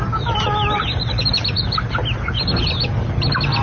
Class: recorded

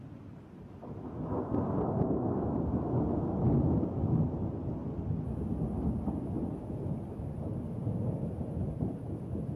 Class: recorded